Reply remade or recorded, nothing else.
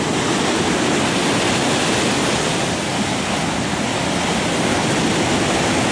recorded